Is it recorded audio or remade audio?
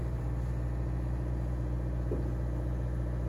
recorded